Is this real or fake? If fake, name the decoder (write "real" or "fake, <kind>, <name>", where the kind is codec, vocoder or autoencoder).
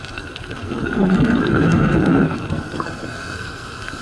fake, codec, SNAC